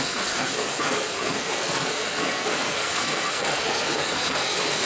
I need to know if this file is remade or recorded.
remade